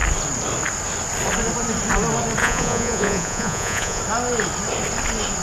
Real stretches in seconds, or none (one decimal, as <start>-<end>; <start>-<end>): 0.0-2.4; 4.0-5.4